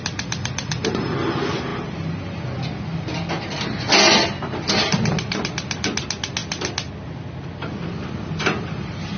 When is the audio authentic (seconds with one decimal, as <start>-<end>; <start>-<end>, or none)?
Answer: 0.0-9.2